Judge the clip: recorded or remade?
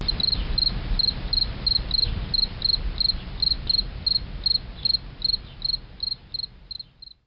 recorded